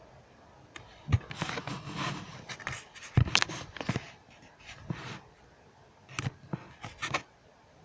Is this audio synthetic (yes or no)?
no